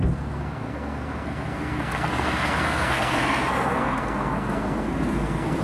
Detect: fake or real fake